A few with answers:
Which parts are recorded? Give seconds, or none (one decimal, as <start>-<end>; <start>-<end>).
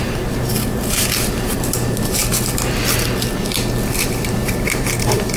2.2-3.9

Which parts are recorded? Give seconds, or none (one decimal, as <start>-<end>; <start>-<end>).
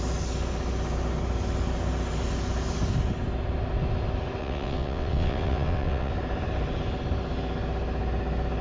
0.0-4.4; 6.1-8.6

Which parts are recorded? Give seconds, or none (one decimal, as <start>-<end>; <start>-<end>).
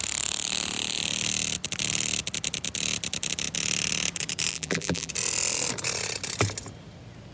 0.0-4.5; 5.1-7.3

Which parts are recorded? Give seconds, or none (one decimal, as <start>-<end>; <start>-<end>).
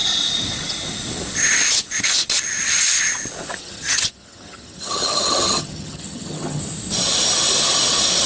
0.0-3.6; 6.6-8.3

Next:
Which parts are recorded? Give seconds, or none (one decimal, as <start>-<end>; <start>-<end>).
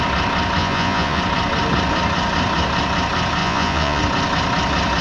0.0-0.6; 1.2-3.4; 4.0-5.0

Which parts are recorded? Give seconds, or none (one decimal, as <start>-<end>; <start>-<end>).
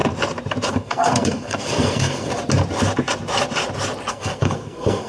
0.0-0.7; 2.3-4.1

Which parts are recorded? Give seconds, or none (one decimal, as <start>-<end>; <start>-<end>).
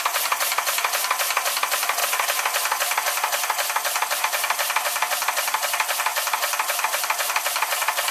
0.0-8.1